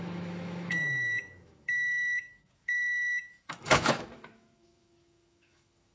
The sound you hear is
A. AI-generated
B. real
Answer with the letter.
A